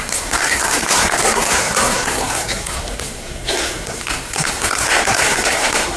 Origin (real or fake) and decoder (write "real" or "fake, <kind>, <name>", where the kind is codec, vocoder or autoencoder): fake, codec, SNAC